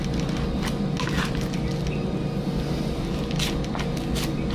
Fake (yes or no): no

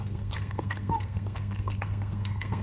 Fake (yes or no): yes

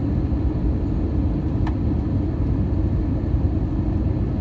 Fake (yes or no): no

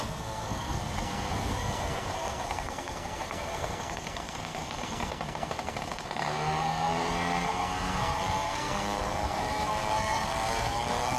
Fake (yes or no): yes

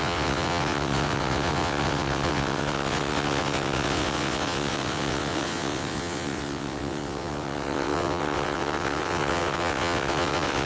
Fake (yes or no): yes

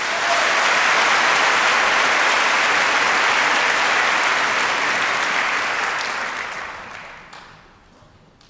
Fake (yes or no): no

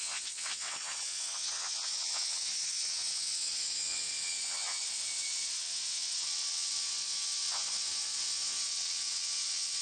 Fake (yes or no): yes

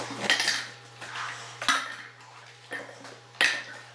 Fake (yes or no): no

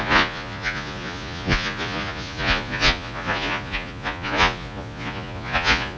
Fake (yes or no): yes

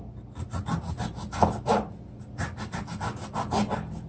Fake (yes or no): no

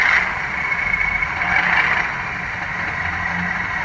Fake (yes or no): no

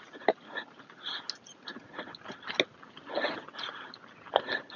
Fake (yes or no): no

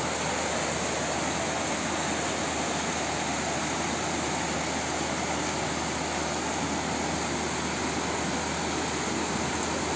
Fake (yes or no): no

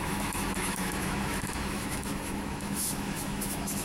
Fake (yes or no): yes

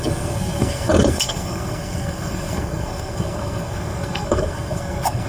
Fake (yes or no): yes